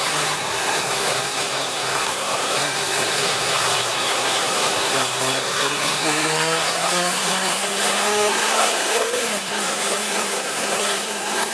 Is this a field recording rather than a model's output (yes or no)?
no